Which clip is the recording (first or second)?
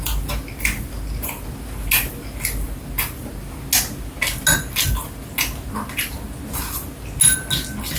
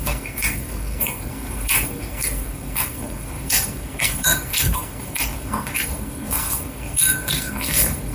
first